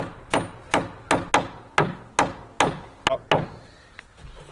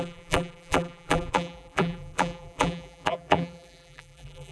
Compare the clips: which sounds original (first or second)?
first